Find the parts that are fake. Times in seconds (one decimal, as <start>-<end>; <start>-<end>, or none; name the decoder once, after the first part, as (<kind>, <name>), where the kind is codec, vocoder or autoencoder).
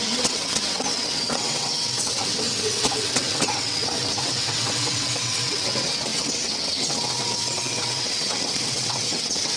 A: 0.0-9.6 (vocoder, WaveNeXt)